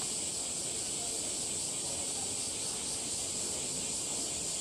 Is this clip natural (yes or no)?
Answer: yes